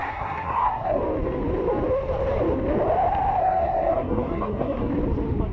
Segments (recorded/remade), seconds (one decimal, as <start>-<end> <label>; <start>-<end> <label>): 0.0-1.0 remade; 1.0-3.4 recorded; 3.4-4.9 remade; 4.9-5.5 recorded